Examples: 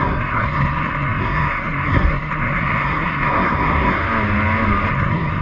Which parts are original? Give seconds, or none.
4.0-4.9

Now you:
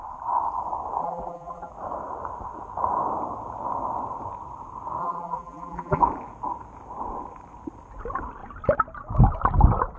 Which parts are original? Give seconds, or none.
0.0-1.0; 1.7-5.0; 6.0-10.0

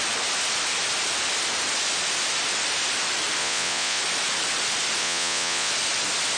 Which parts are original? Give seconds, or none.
0.0-3.4; 4.0-5.0; 5.7-6.4

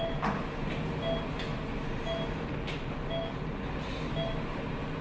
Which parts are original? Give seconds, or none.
0.0-5.0

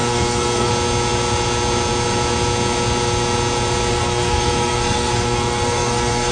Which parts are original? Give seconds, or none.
0.7-3.9